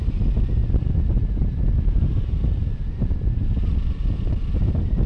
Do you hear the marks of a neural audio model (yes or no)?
no